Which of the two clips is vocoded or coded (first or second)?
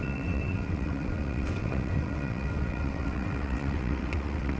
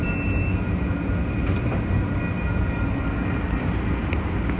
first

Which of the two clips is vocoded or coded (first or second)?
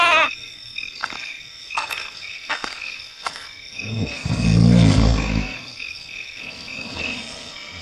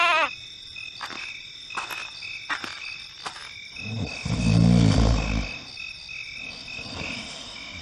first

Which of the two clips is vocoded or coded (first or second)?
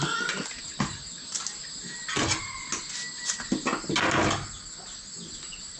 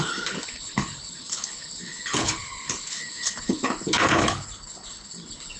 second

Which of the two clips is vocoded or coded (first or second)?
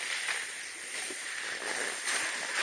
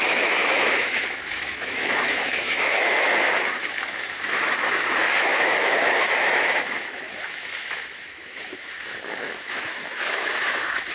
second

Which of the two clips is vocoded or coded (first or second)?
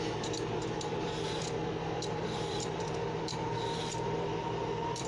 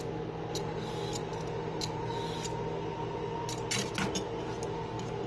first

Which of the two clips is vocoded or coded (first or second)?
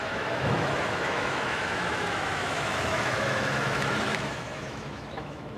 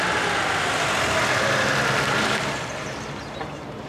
first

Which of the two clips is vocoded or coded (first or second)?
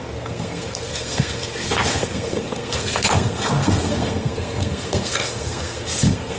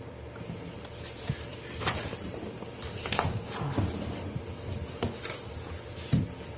first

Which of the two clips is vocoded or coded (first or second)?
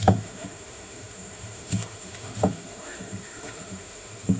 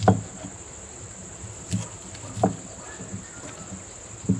first